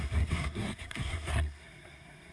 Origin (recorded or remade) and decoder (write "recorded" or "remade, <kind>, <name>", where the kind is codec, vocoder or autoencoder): remade, codec, SNAC